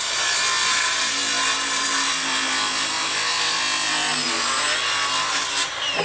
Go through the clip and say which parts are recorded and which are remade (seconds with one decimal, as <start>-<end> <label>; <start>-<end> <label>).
0.0-6.0 recorded